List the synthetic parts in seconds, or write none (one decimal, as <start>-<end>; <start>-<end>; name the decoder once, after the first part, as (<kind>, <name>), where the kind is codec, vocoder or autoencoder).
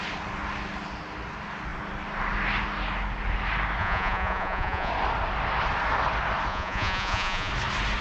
3.8-4.9 (vocoder, Vocos); 6.5-7.5